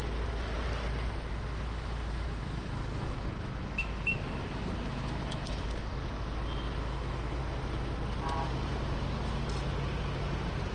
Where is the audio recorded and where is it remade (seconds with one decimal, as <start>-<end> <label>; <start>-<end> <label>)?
0.0-1.3 recorded; 1.3-6.0 remade; 6.0-6.8 recorded; 6.8-7.4 remade; 7.4-10.7 recorded